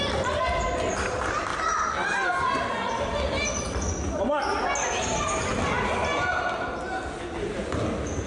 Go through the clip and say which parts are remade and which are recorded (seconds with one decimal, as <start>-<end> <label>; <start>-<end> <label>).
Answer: 0.0-8.3 recorded